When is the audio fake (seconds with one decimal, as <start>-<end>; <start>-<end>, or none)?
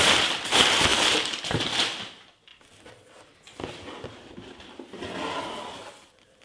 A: none